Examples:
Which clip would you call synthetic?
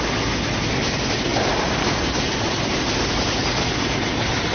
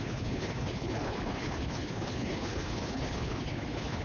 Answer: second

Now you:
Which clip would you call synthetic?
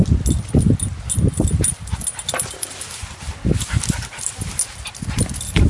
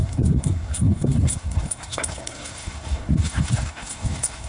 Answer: second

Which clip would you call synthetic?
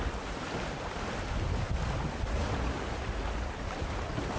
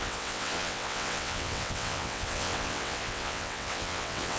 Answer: second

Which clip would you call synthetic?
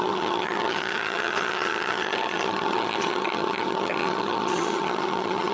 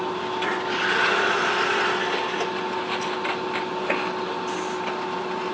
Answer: first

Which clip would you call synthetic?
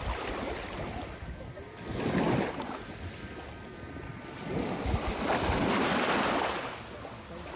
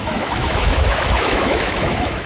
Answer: second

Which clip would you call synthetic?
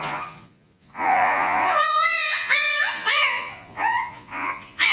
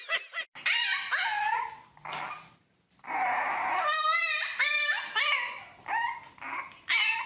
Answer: first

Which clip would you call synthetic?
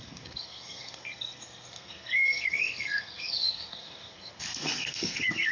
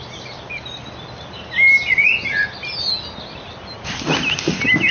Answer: first